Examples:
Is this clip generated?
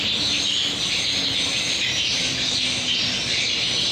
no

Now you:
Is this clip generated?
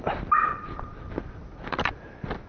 no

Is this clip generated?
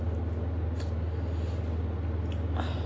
no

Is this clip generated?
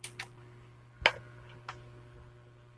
no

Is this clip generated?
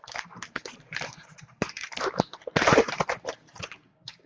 yes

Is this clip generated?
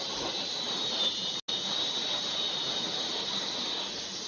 no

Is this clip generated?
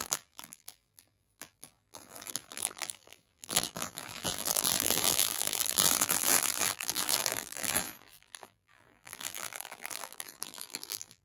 yes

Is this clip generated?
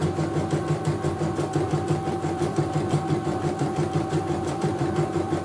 yes